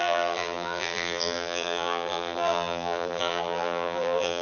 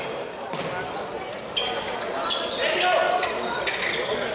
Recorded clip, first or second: second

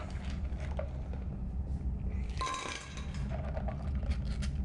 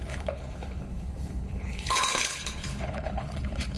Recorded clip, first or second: first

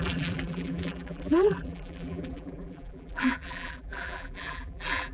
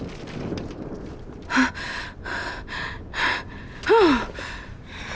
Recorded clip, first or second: second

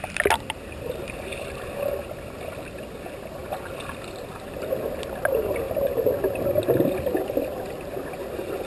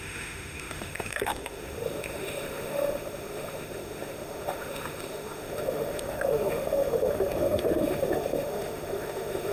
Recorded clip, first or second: first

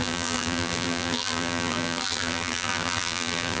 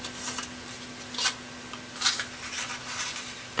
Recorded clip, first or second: second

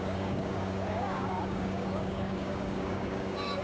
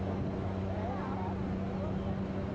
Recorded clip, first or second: second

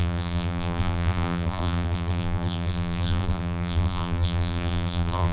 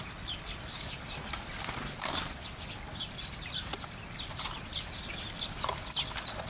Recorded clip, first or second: second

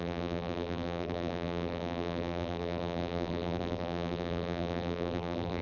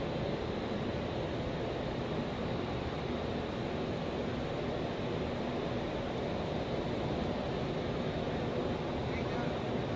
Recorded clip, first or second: second